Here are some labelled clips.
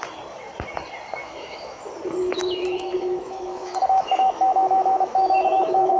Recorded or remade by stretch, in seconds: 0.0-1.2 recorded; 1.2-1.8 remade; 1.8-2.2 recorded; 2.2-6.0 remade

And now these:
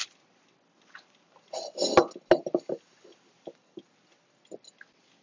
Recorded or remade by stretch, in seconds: 0.0-5.2 recorded

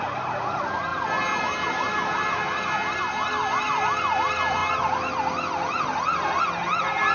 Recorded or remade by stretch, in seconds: 0.0-7.1 recorded

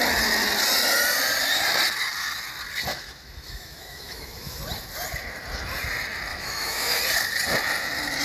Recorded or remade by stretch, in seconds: 0.0-2.9 recorded; 2.9-4.6 remade; 4.6-6.3 recorded; 6.3-7.0 remade; 7.0-8.2 recorded

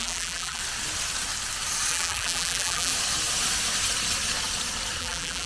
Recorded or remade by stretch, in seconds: 0.0-0.6 remade; 0.6-1.9 recorded; 1.9-2.9 remade; 2.9-5.0 recorded; 5.0-5.5 remade